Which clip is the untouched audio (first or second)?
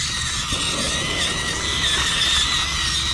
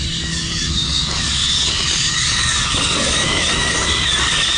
first